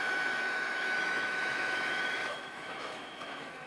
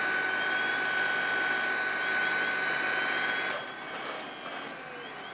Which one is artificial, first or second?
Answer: first